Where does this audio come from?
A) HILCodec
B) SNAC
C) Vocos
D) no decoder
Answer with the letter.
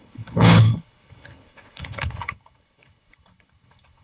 A